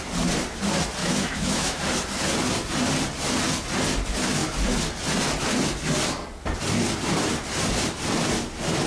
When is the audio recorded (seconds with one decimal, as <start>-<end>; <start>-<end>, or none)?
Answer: 0.0-1.0; 1.8-8.9